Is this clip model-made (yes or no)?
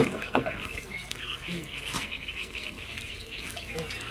yes